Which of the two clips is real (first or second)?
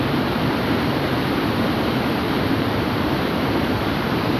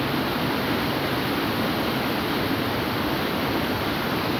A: second